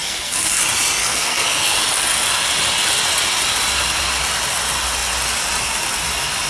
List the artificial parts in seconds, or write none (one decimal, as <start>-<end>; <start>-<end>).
0.0-0.6; 1.0-1.8